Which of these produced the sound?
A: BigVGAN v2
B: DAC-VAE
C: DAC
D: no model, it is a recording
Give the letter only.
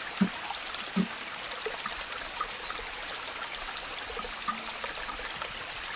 D